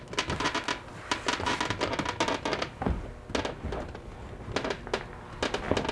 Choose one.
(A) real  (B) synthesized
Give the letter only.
A